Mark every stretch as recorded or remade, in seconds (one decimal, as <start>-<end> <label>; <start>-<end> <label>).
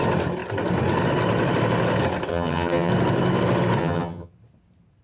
0.0-2.3 recorded; 2.3-2.9 remade; 2.9-3.8 recorded; 3.8-4.3 remade; 4.3-5.0 recorded